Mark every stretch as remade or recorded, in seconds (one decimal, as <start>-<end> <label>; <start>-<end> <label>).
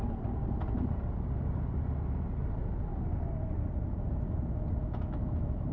0.0-4.8 recorded; 4.8-5.7 remade